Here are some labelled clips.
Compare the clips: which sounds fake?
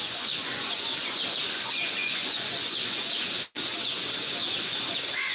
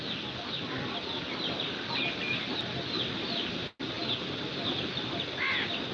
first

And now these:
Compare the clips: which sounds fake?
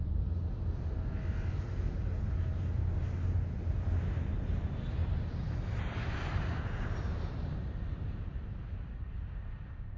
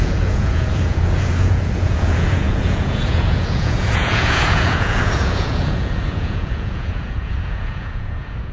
second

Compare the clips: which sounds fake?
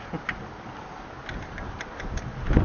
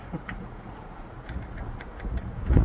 second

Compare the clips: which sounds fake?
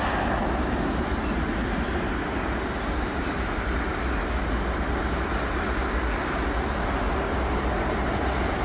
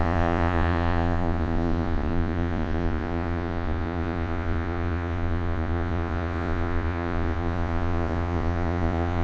second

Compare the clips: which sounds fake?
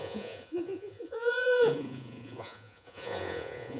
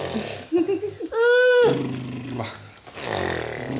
first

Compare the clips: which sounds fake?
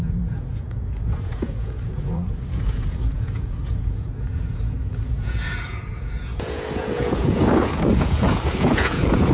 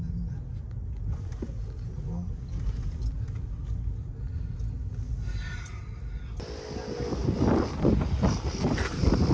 first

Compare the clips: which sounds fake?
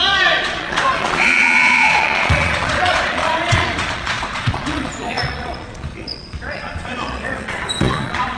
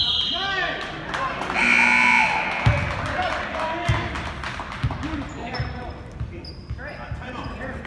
first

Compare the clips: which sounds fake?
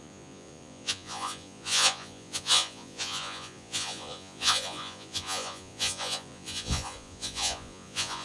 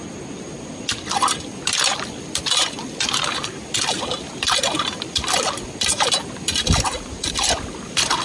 first